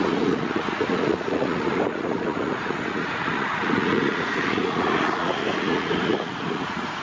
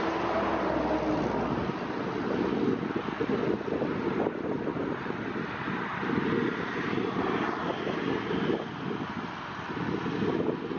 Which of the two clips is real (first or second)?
second